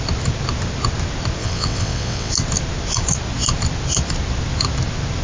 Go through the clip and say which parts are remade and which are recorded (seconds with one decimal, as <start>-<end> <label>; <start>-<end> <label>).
0.0-1.4 recorded; 1.4-2.3 remade; 2.3-5.2 recorded